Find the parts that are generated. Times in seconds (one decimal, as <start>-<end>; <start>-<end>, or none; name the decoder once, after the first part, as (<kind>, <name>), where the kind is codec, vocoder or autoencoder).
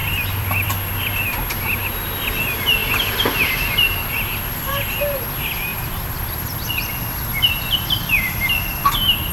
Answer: 0.0-0.7 (vocoder, BigVGAN v2); 5.7-6.7; 7.3-8.1